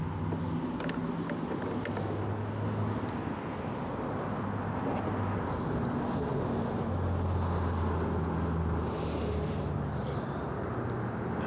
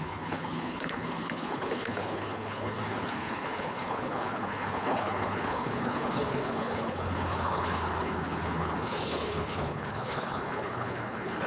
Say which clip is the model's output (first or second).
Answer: second